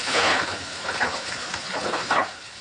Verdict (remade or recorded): remade